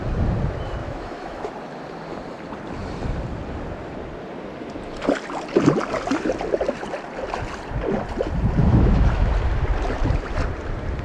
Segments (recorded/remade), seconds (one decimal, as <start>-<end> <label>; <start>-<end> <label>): 0.0-0.8 recorded; 0.8-1.5 remade; 1.5-8.6 recorded; 8.6-9.3 remade; 9.3-11.0 recorded